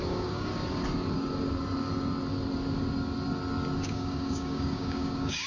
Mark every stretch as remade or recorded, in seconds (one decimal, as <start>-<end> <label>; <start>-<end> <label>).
0.0-0.5 remade; 0.5-3.8 recorded; 3.8-5.5 remade